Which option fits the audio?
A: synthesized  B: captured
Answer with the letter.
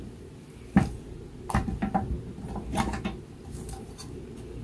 B